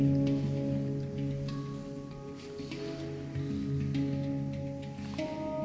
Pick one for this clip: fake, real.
real